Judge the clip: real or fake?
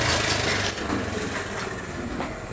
real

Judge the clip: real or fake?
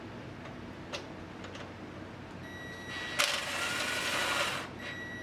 real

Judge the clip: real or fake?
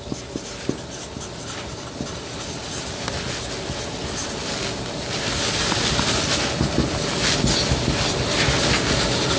real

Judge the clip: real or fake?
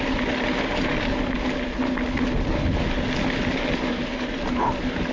real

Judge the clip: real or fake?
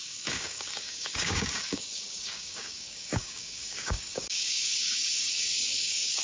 fake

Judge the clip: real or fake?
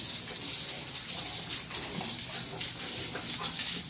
real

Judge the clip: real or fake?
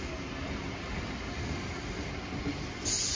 real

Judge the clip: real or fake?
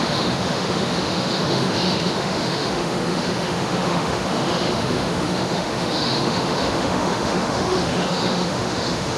fake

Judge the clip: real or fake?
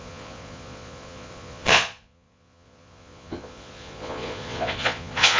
fake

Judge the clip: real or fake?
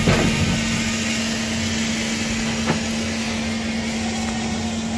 real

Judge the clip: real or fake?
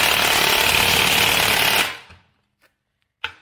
real